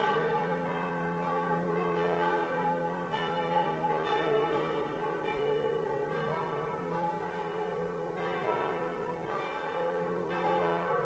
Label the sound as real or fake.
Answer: fake